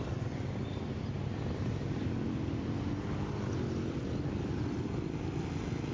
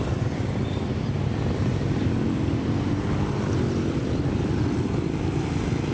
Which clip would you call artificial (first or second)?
second